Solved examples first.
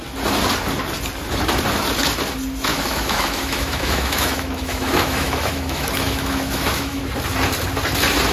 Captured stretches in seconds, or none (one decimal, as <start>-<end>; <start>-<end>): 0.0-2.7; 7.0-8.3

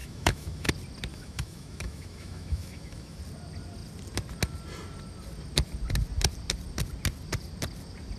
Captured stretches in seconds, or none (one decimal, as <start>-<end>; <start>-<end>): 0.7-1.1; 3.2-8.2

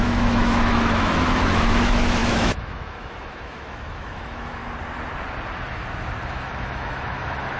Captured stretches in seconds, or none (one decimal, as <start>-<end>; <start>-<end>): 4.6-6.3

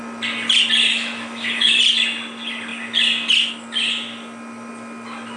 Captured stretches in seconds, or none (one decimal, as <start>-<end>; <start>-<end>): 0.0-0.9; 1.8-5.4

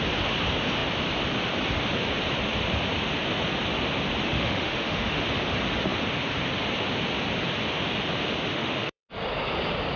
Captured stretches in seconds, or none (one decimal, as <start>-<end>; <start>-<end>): 0.0-4.3; 5.2-8.5; 9.1-10.0